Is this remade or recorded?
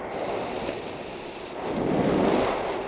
recorded